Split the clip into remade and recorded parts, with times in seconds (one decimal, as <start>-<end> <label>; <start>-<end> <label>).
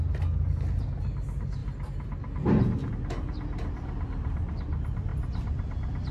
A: 0.0-6.1 recorded